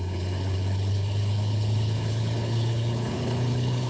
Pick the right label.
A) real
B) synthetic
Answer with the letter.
B